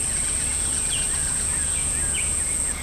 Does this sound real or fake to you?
fake